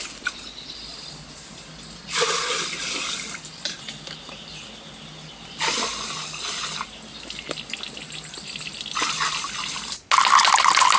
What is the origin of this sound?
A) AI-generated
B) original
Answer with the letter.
B